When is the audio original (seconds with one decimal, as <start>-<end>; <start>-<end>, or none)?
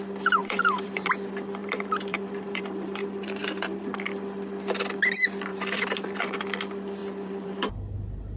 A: 0.0-0.4; 1.1-1.6; 4.0-5.5; 6.4-7.0; 7.7-8.4